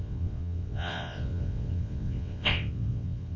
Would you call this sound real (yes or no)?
no